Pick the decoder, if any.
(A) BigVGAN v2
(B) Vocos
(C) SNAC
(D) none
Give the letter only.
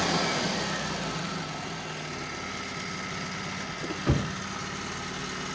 D